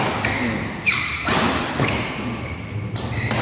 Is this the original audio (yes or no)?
yes